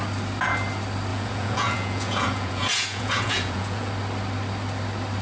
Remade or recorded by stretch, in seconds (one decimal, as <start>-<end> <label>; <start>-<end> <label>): 0.0-1.1 recorded; 1.1-3.9 remade; 3.9-5.2 recorded